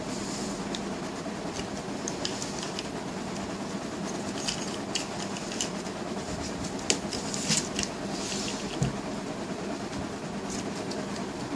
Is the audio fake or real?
real